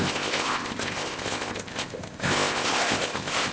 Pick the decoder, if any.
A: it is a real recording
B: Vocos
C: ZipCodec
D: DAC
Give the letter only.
C